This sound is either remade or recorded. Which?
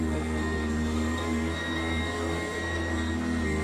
remade